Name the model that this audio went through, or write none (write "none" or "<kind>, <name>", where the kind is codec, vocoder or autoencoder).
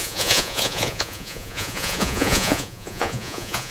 vocoder, Vocos